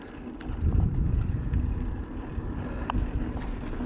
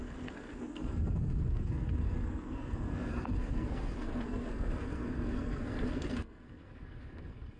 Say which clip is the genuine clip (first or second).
first